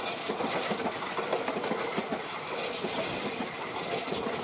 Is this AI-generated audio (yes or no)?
no